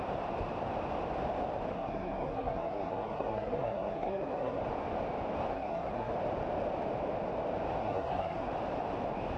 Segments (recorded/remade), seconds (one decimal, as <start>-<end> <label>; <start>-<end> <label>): 0.0-1.7 recorded; 1.7-4.6 remade; 4.6-5.5 recorded; 5.5-6.1 remade; 6.1-7.8 recorded; 7.8-8.5 remade; 8.5-9.4 recorded